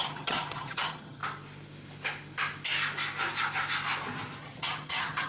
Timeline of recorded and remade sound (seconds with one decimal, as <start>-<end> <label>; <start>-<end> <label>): 0.0-1.2 remade; 1.2-4.4 recorded; 4.4-5.3 remade